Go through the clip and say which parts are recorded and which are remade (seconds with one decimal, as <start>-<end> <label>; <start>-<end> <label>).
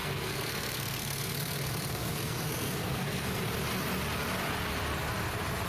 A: 0.0-3.4 remade; 3.4-5.7 recorded